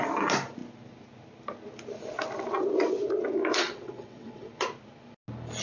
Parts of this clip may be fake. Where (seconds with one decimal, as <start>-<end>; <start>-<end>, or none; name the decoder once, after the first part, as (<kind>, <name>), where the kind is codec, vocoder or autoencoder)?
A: 3.5-4.5 (vocoder, WaveNeXt)